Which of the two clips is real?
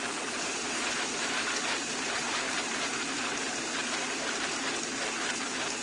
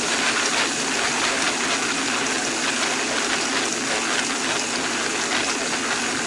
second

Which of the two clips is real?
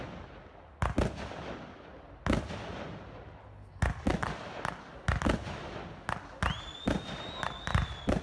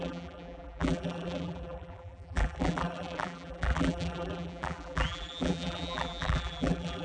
first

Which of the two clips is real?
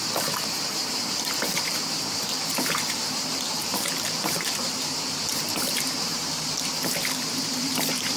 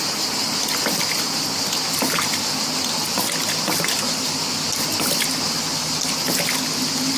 second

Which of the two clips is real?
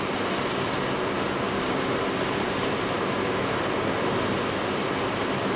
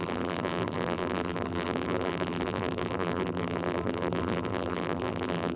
first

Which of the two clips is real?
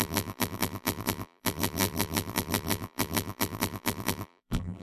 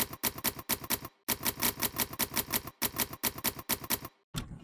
second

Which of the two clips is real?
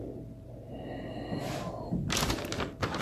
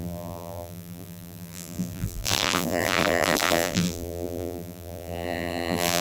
first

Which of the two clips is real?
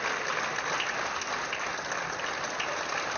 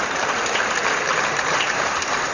first